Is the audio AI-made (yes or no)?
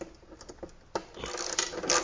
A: no